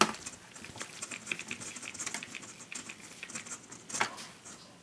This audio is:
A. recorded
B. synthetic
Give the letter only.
A